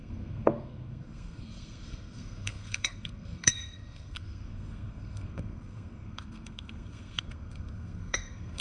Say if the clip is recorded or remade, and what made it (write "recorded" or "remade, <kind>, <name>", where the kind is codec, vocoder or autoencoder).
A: remade, codec, SNAC